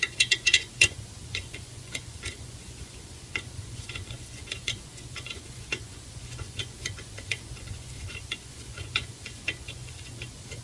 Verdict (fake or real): fake